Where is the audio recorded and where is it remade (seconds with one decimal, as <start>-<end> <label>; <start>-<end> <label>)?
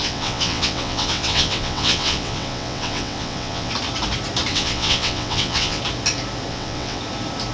0.0-3.7 remade; 3.7-4.5 recorded; 4.5-5.8 remade; 5.8-6.5 recorded; 6.5-7.0 remade; 7.0-7.5 recorded